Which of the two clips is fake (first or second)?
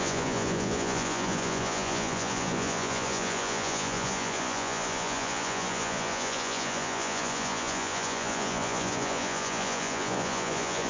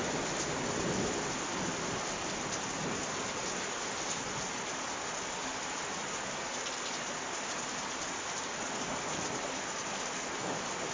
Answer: first